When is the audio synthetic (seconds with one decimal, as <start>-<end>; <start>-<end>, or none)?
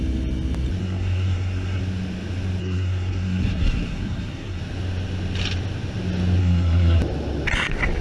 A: 0.8-1.8; 2.6-4.6; 6.4-7.0